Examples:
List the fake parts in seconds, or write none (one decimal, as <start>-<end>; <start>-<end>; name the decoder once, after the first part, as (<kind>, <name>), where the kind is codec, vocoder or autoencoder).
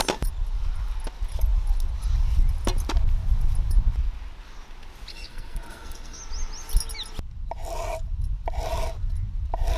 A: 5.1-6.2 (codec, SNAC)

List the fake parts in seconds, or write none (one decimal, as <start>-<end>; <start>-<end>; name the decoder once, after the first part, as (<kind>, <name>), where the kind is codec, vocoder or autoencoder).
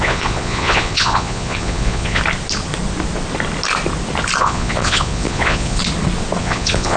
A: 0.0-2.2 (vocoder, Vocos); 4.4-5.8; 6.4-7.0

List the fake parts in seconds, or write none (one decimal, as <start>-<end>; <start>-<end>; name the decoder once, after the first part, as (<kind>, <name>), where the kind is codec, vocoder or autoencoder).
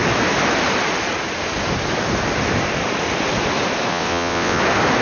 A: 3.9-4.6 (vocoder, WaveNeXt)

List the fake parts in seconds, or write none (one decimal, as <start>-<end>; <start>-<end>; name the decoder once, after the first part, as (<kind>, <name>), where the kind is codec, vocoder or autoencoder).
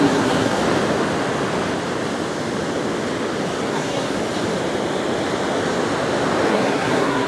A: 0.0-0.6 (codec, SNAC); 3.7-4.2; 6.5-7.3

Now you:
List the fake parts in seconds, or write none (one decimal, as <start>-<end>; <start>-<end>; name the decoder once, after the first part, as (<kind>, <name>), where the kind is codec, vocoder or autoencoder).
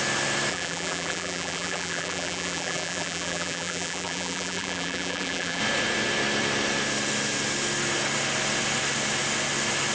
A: 0.5-5.6 (vocoder, BigVGAN v2)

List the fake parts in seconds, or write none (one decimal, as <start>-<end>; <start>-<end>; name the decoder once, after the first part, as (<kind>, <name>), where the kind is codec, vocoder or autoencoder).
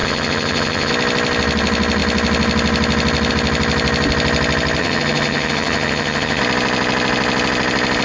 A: 0.0-0.9 (vocoder, HiFi-GAN); 4.8-6.4